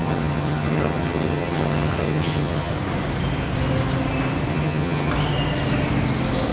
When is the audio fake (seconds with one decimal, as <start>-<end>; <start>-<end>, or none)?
0.0-2.7; 4.5-5.1